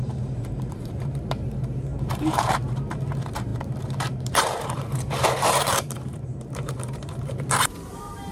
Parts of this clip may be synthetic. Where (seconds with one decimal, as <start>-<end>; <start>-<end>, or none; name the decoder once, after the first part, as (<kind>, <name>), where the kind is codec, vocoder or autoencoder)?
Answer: 0.0-8.3 (vocoder, BigVGAN v2)